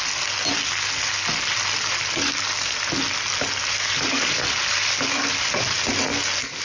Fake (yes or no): no